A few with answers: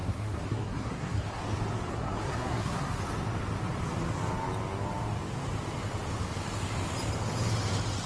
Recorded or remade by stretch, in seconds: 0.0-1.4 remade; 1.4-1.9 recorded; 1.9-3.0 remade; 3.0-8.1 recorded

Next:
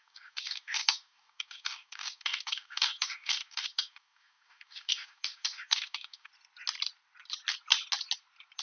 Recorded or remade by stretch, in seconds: 0.0-6.3 remade; 6.3-8.6 recorded

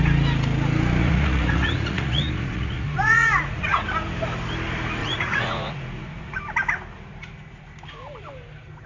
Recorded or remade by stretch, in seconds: 0.0-1.0 recorded; 1.0-3.8 remade; 3.8-5.0 recorded; 5.0-6.4 remade; 6.4-8.9 recorded

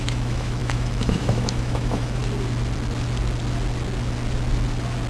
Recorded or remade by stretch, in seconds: 0.0-2.2 remade; 2.2-5.1 recorded